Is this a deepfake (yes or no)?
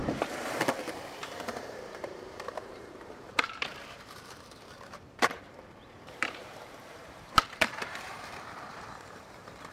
yes